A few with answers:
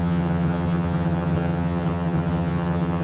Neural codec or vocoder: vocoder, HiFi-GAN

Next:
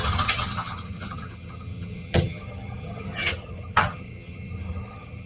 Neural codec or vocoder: vocoder, HiFi-GAN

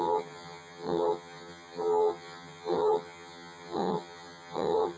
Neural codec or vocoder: vocoder, HiFi-GAN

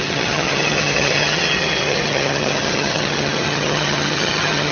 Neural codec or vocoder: vocoder, HiFi-GAN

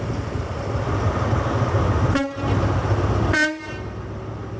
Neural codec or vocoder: none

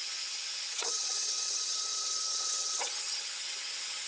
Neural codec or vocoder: vocoder, HiFi-GAN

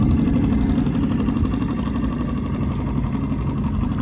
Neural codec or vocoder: none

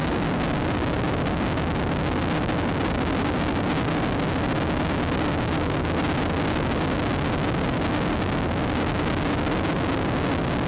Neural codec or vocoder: none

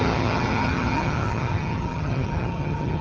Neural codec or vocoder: vocoder, HiFi-GAN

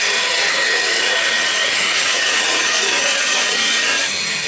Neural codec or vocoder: vocoder, HiFi-GAN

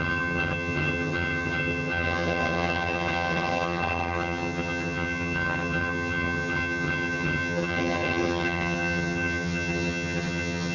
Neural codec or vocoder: vocoder, HiFi-GAN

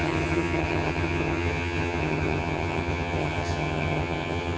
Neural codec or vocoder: vocoder, HiFi-GAN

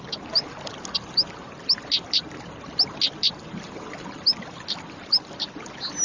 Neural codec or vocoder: none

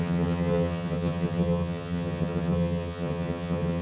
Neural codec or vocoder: vocoder, HiFi-GAN